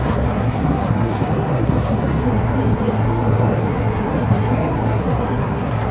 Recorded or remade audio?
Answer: remade